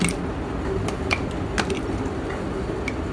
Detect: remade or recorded recorded